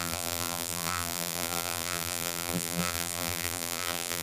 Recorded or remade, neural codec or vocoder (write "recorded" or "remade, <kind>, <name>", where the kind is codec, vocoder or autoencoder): remade, vocoder, BigVGAN v2